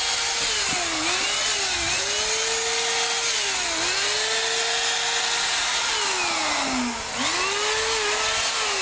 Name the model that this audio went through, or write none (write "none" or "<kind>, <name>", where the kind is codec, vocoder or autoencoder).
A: none